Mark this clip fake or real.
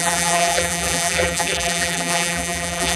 fake